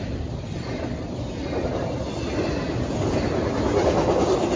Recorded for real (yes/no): yes